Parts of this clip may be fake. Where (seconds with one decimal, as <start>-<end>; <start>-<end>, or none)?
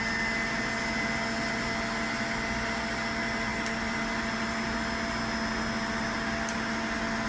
none